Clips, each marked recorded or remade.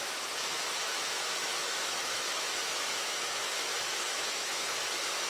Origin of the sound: remade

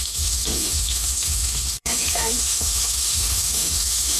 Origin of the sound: remade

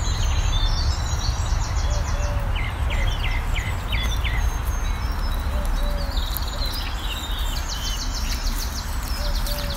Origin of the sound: recorded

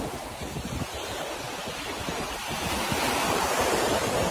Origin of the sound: recorded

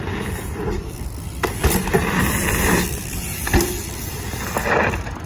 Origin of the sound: recorded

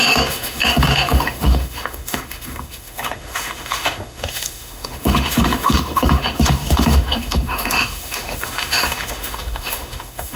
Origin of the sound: remade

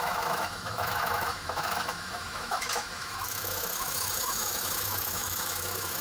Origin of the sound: remade